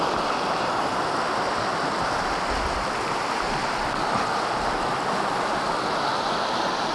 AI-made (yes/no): no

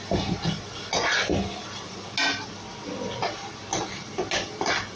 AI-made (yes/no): no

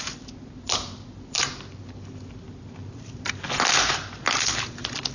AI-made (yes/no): no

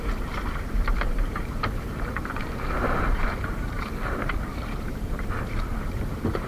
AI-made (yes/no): yes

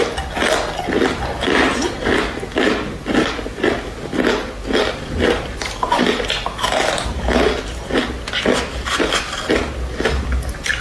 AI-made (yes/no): no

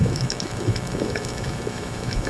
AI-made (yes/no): yes